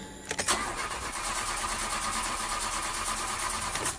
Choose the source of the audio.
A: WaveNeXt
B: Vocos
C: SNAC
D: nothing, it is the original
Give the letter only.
D